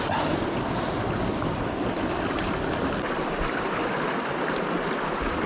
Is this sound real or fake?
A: real